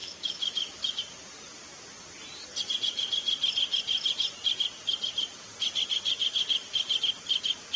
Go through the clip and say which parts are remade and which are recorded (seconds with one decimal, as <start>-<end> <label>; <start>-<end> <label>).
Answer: 0.0-1.0 remade; 1.0-7.8 recorded